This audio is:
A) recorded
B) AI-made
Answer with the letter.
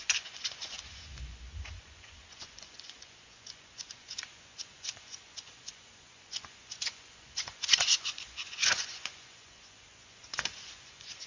B